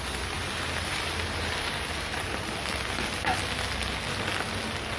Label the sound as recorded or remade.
recorded